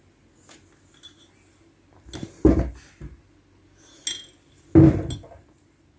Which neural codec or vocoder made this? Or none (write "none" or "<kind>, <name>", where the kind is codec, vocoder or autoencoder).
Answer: none